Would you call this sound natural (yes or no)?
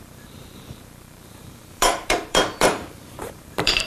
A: no